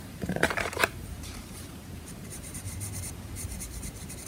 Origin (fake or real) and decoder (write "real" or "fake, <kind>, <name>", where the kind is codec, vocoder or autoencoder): fake, vocoder, BigVGAN v2